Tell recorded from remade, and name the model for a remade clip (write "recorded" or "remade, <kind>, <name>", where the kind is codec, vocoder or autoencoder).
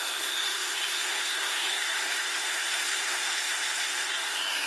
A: remade, codec, SNAC